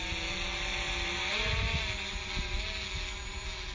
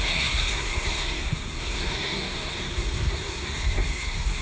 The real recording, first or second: first